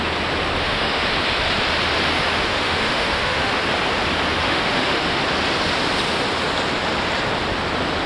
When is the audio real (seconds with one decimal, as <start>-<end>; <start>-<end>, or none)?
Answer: 0.0-0.6; 1.1-2.5; 3.5-4.4; 5.2-8.1